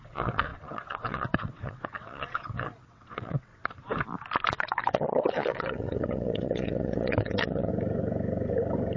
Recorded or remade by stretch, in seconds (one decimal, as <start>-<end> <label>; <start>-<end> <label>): 0.0-3.5 remade; 3.5-4.5 recorded; 4.5-7.7 remade; 7.7-9.0 recorded